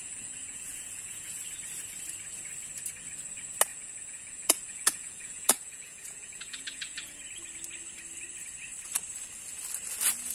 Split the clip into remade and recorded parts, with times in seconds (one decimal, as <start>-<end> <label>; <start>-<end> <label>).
0.0-1.4 remade; 1.4-3.7 recorded; 3.7-7.2 remade; 7.2-10.3 recorded